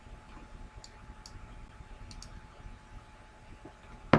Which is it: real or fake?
real